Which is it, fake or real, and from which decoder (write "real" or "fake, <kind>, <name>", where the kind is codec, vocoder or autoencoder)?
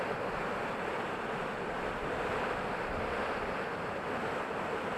real